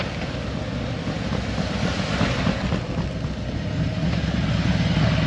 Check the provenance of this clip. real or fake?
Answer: real